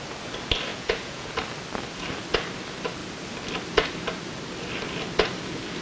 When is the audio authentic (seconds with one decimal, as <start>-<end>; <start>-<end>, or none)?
0.0-0.7; 1.3-5.8